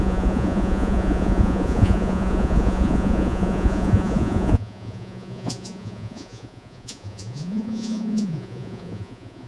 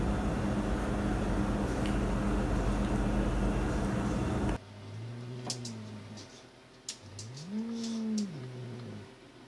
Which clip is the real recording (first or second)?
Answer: second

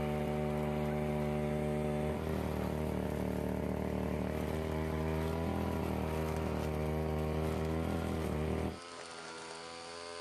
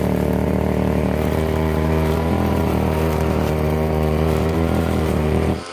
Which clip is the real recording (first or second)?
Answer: first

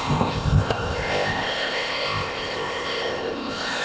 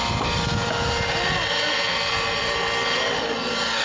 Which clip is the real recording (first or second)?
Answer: second